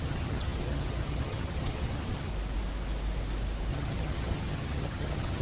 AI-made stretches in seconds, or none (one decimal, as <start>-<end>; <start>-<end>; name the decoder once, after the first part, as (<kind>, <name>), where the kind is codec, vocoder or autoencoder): 0.0-2.3 (vocoder, HiFi-GAN); 3.7-5.4